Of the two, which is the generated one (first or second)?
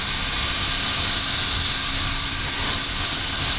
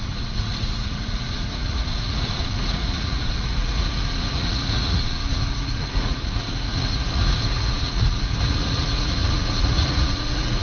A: second